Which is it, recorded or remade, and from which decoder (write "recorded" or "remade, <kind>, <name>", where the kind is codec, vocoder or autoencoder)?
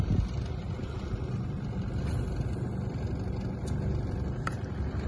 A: recorded